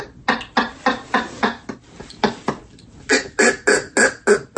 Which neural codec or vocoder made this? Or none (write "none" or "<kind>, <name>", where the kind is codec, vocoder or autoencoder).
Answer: none